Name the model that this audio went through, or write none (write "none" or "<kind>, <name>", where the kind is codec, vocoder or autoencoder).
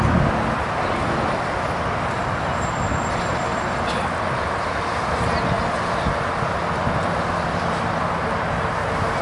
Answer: none